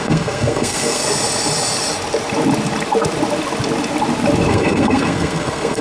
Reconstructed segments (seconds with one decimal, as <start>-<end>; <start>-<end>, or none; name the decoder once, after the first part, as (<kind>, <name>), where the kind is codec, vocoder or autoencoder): 0.0-1.0 (codec, SNAC); 4.5-5.8